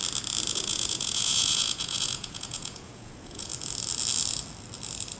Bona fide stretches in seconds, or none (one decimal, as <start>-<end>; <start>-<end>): 0.0-0.5; 3.5-5.2